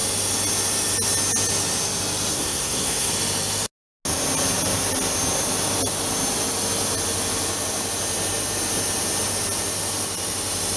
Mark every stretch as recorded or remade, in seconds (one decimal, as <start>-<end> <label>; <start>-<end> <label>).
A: 0.0-2.3 recorded; 2.3-3.1 remade; 3.1-10.8 recorded